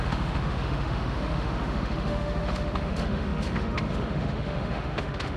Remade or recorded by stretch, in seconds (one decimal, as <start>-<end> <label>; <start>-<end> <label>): 0.0-5.4 remade